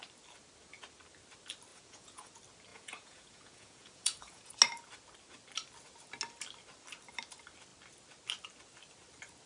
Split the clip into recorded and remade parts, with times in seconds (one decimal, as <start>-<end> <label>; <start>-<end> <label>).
0.0-1.7 recorded; 1.7-2.3 remade; 2.3-2.7 recorded; 2.7-4.5 remade; 4.5-9.5 recorded